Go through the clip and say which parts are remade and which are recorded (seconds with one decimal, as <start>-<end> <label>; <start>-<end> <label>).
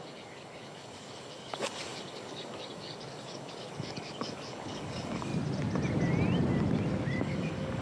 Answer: 0.0-5.3 remade; 5.3-7.2 recorded; 7.2-7.8 remade